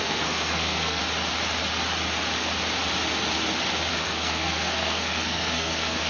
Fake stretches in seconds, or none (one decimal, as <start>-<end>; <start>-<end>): 0.0-1.0; 3.9-6.1